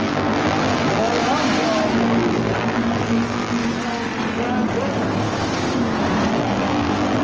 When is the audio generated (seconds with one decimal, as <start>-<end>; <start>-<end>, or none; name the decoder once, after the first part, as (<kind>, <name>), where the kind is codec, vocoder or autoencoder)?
0.0-1.2 (vocoder, BigVGAN v2); 1.9-3.6; 6.3-7.2